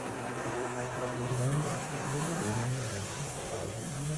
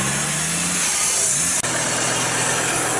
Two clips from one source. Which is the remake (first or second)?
first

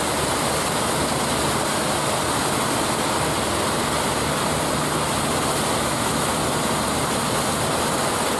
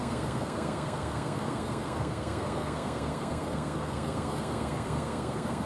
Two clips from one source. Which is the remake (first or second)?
second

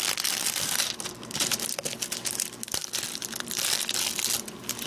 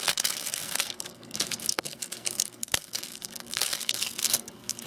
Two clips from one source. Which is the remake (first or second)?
second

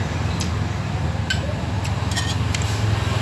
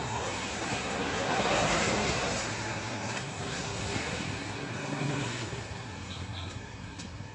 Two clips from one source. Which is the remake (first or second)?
second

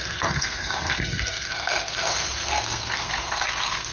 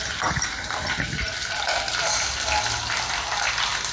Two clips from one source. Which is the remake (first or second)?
first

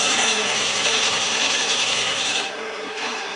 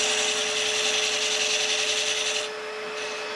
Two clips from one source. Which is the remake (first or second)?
first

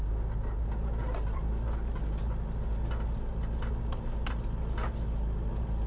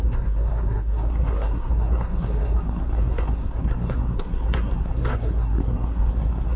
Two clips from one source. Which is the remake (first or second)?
second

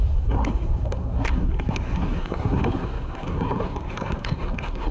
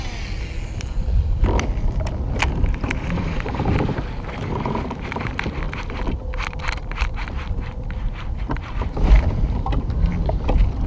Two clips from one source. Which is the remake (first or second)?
first